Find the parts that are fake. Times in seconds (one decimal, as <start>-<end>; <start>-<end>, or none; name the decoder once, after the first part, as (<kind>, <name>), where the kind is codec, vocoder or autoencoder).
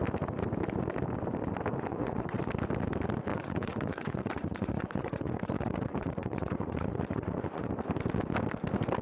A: 1.9-2.4 (vocoder, Vocos); 3.3-7.7